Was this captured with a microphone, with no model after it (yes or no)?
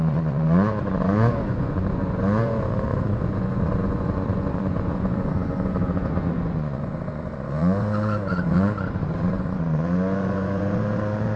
no